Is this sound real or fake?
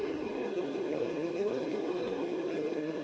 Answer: fake